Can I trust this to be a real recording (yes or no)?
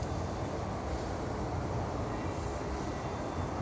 yes